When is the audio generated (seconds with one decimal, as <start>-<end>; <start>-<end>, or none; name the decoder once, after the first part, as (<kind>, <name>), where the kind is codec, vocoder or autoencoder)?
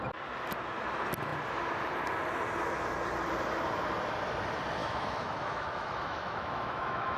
4.8-7.2 (autoencoder, DAC-VAE)